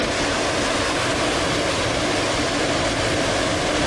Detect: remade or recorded recorded